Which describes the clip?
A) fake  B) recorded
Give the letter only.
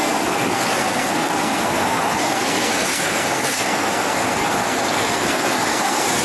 A